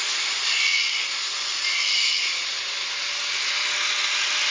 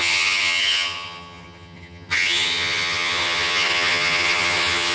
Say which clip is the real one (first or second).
first